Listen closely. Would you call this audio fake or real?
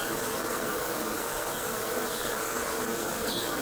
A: fake